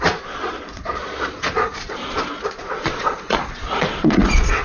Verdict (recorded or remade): remade